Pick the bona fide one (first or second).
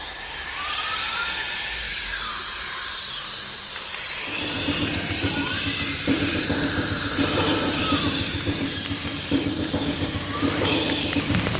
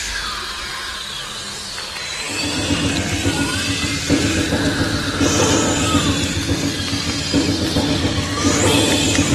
second